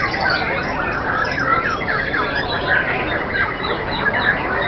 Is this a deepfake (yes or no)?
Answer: no